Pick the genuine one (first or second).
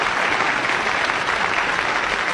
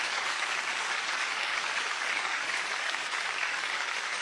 first